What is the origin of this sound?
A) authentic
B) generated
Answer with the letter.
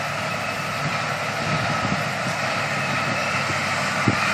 A